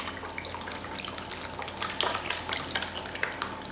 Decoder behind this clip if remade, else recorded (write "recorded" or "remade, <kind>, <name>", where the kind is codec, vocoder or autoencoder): recorded